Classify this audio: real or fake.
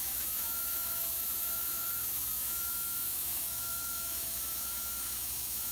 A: fake